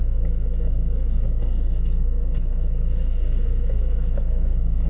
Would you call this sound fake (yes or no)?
yes